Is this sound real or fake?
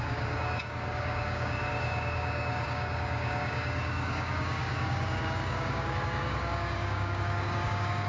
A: fake